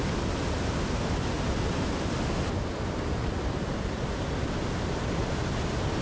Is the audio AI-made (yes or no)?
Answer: no